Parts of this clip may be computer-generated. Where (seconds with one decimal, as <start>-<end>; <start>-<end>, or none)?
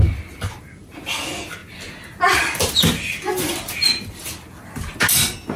none